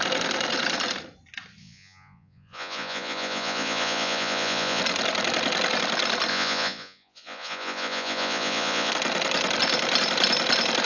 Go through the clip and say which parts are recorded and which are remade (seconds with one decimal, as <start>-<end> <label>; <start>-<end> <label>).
0.0-1.6 recorded; 1.6-4.8 remade; 4.8-6.3 recorded; 6.3-8.9 remade; 8.9-10.8 recorded